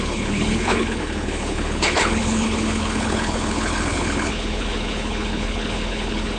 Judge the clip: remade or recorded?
remade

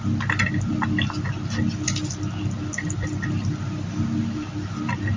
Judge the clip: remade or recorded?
recorded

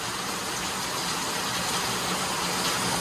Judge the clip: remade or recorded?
recorded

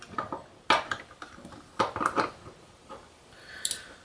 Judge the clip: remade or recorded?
recorded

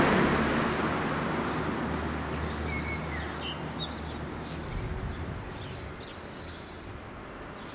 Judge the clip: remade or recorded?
recorded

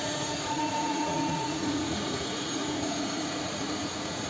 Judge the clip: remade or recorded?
remade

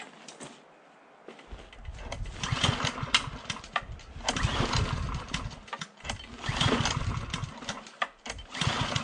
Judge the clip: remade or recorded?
recorded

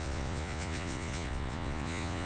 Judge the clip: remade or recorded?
remade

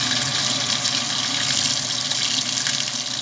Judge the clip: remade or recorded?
recorded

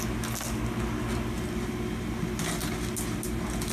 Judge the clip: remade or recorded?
recorded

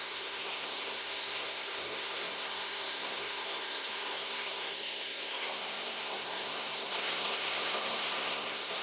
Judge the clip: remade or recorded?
remade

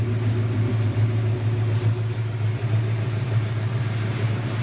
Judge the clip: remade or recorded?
recorded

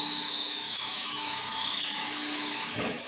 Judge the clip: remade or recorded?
remade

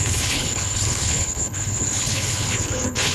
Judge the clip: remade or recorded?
remade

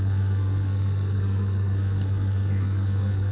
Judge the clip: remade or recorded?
remade